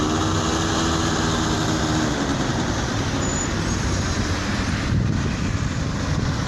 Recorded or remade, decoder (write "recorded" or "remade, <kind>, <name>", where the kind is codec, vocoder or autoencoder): recorded